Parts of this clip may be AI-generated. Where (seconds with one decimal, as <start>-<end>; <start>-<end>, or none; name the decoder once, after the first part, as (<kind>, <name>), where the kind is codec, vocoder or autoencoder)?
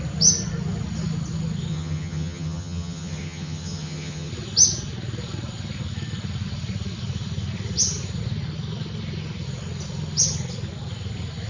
1.7-4.3 (vocoder, HiFi-GAN)